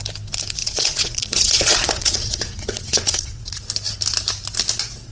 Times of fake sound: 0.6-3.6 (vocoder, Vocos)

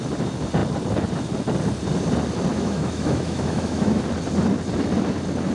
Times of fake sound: 2.5-4.0 (autoencoder, DAC-VAE)

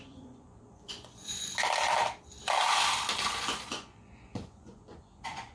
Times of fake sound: 0.0-1.5 (vocoder, Vocos); 3.1-5.5

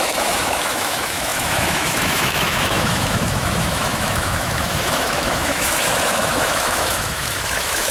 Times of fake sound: 0.0-7.9 (autoencoder, DAC-VAE)

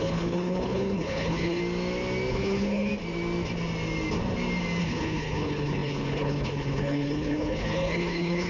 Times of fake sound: 0.0-1.6 (codec, HILCodec); 2.3-2.9; 4.8-8.5

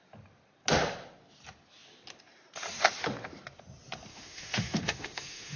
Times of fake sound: 4.1-5.6 (autoencoder, DAC-VAE)